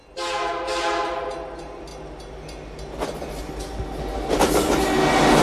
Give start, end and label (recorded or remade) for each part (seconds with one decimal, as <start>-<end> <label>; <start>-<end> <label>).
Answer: 0.0-5.4 recorded